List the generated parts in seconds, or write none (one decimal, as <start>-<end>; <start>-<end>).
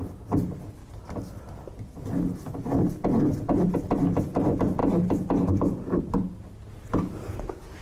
none